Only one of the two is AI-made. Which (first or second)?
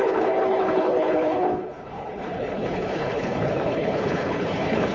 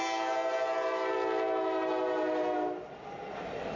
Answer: first